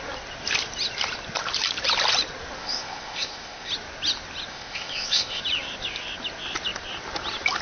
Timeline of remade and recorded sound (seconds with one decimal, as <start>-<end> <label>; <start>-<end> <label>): 0.0-2.6 recorded; 2.6-3.7 remade; 3.7-4.5 recorded; 4.5-5.4 remade; 5.4-7.6 recorded